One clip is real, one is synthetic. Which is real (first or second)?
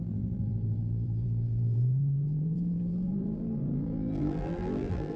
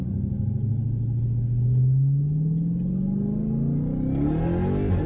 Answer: second